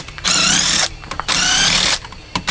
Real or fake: real